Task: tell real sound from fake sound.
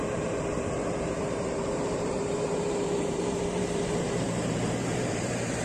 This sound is fake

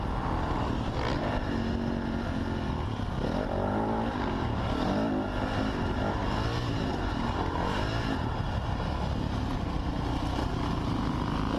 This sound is real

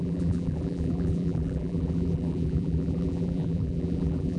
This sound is fake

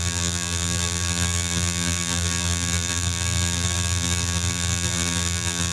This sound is fake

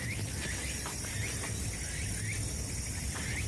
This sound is real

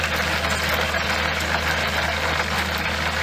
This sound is real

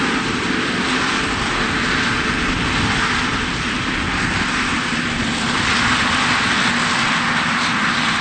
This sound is real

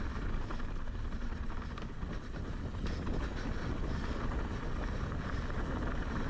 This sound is real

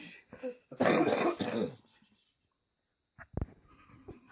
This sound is real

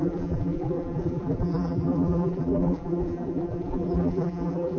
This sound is fake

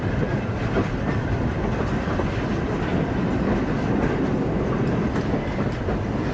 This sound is fake